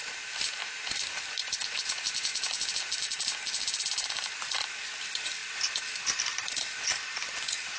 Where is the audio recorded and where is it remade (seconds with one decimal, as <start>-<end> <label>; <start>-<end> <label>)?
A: 0.0-0.6 remade; 0.6-1.9 recorded; 1.9-2.3 remade; 2.3-4.1 recorded; 4.1-5.4 remade; 5.4-7.8 recorded